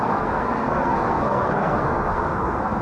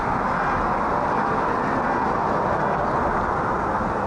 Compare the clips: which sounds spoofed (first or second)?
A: first